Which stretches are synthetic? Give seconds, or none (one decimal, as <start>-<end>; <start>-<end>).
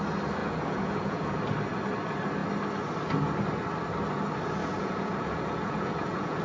0.4-1.4; 4.6-6.4